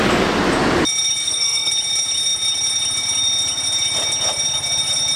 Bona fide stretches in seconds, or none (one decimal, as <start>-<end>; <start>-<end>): 0.0-1.2; 1.7-5.2